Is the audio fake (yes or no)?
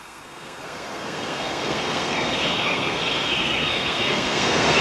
yes